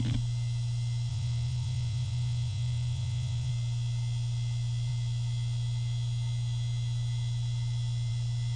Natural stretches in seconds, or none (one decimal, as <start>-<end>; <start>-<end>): 0.0-1.1; 3.5-8.6